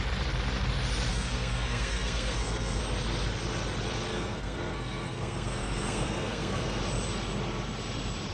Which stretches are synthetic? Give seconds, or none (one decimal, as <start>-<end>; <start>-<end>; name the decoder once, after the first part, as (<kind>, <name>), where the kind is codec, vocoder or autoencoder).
1.1-2.8 (codec, SNAC); 4.1-6.8